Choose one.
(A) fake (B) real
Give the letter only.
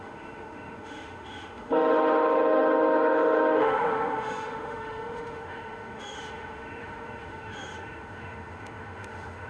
A